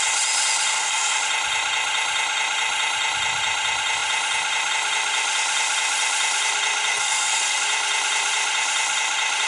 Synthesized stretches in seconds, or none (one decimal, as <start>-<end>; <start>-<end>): 0.7-1.2; 6.9-7.6